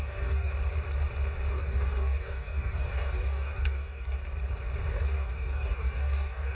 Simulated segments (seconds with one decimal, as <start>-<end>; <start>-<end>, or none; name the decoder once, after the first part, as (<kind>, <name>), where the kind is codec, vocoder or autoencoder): 0.0-0.5 (codec, DAC); 1.5-4.2; 4.9-6.5